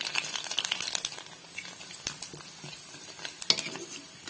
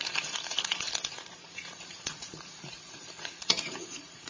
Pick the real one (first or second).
first